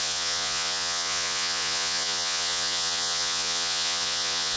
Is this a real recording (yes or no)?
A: no